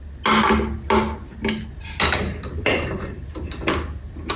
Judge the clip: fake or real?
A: real